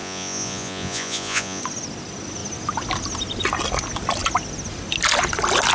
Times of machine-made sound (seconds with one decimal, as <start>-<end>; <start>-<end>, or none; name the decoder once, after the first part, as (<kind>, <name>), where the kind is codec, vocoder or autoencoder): 0.0-1.6 (vocoder, Vocos)